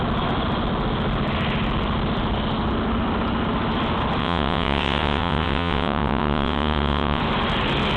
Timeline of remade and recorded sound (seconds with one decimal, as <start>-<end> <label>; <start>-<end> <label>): 0.0-4.2 recorded; 4.2-7.2 remade; 7.2-8.0 recorded